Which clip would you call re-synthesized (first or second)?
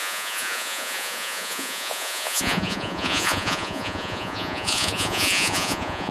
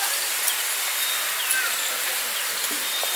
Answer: first